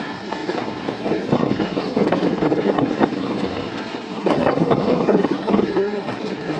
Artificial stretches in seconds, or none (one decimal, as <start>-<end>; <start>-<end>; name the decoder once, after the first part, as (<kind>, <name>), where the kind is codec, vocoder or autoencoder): 0.0-6.6 (codec, SNAC)